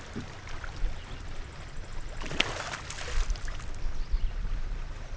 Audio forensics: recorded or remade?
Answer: recorded